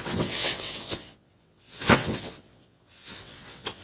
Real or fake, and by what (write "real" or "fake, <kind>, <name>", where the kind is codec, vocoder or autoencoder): fake, vocoder, WaveNeXt